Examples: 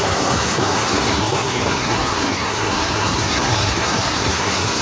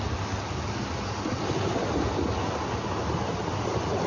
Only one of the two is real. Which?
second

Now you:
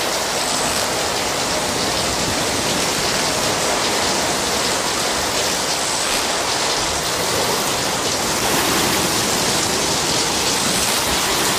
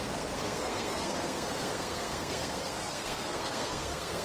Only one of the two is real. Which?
first